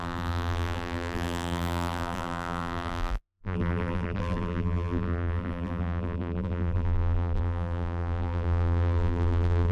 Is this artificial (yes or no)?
yes